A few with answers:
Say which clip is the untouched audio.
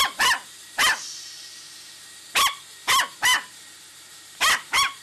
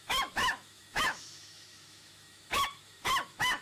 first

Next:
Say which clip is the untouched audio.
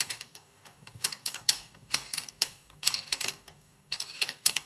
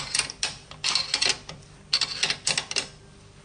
second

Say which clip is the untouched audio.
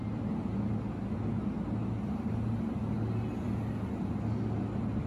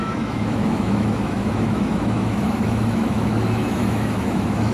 first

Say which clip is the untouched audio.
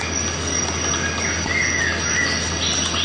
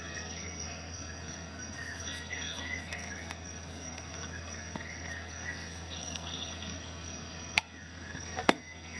first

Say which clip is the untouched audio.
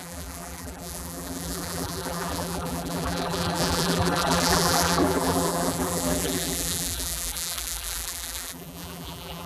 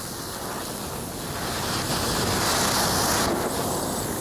second